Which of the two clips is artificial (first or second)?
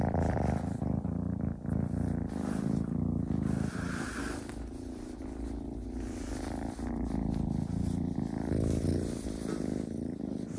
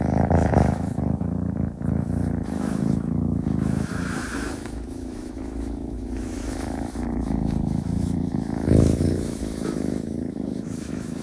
second